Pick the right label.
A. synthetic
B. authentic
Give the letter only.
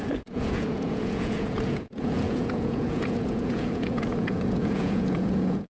A